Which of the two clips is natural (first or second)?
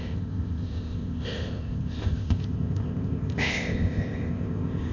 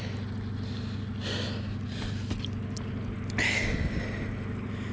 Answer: second